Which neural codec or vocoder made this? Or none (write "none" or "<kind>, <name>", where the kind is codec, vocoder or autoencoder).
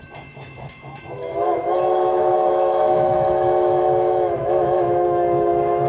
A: autoencoder, DAC-VAE